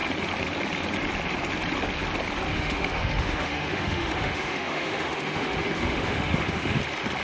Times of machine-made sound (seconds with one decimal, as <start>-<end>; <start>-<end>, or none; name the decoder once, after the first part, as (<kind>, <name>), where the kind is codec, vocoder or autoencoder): 2.5-6.8 (autoencoder, DAC-VAE)